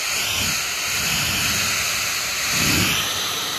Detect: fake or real real